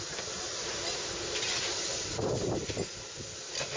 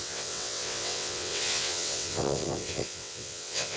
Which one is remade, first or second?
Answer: second